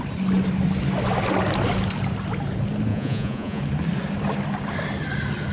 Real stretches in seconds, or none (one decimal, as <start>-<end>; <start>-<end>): 0.0-2.9; 3.6-5.5